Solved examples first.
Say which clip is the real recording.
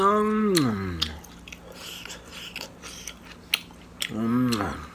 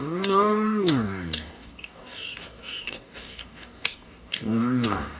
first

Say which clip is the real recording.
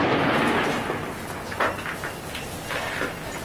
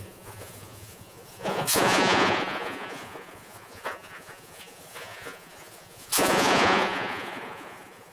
first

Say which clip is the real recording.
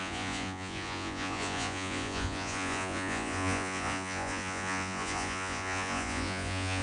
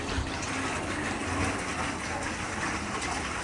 second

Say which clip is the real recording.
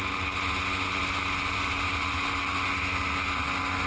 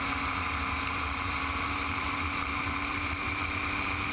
first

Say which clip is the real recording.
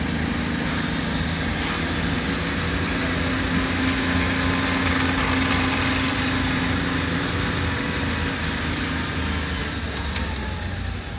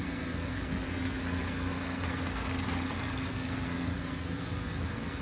first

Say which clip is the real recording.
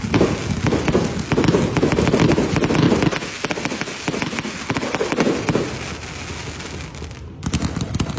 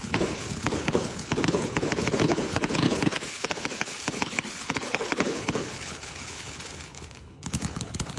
first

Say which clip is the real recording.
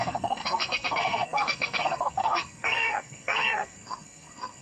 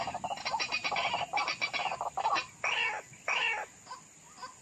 second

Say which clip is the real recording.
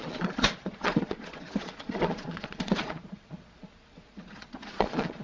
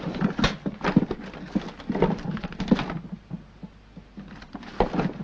second